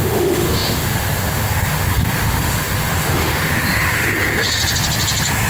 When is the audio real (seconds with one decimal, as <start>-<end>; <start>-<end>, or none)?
4.6-5.5

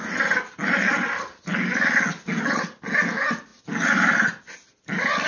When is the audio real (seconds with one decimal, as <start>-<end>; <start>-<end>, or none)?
0.0-5.3

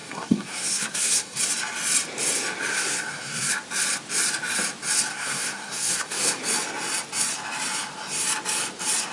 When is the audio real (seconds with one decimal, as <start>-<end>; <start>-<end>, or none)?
1.4-2.7; 3.5-5.1; 6.4-9.1

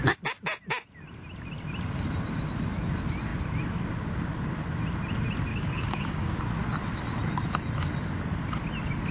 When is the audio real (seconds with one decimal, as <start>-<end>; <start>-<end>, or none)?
0.0-5.5; 6.4-9.1

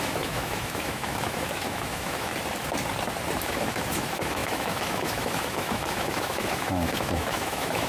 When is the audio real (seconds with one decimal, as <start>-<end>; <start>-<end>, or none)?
2.3-3.4